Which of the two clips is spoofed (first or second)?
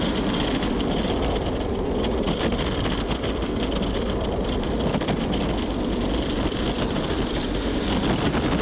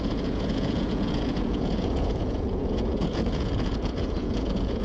second